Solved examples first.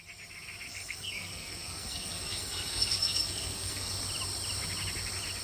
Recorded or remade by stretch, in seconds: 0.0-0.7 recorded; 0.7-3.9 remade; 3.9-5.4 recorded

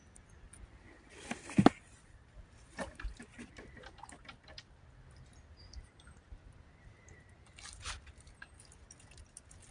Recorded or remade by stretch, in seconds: 0.0-9.7 recorded